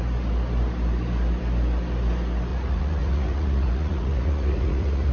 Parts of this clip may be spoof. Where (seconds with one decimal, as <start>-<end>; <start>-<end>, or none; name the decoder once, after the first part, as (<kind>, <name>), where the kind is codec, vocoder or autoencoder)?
2.5-5.1 (vocoder, Vocos)